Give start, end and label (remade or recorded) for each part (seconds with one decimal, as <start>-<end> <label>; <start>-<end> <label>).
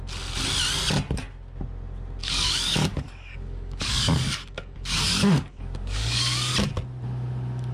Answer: 0.0-2.2 recorded; 2.2-6.5 remade; 6.5-7.7 recorded